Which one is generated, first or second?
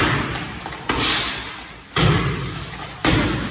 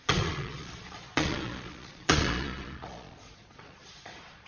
second